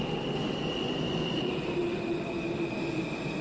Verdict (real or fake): real